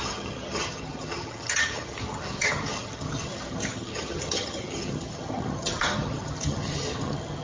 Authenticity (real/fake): fake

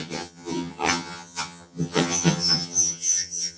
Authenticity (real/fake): fake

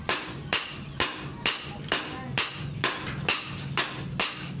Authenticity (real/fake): real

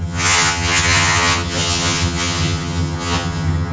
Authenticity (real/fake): fake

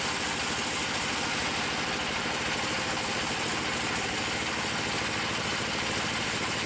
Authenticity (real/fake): real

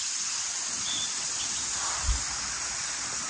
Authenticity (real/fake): real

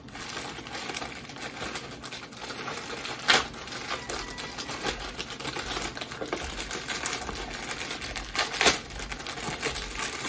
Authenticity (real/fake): real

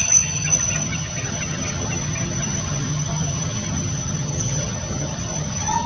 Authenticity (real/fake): fake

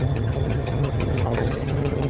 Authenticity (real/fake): fake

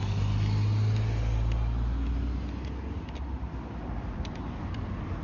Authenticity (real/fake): real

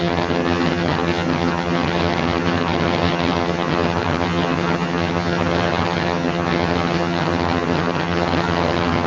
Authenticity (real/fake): fake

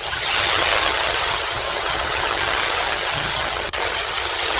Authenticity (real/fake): fake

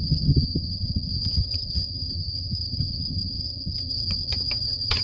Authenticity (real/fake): fake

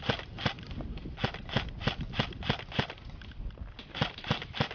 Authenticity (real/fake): real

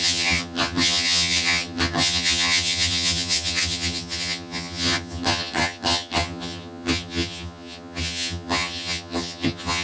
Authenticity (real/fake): fake